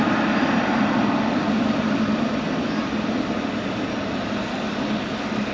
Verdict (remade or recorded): recorded